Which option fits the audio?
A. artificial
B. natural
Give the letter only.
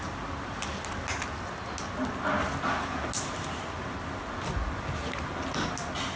B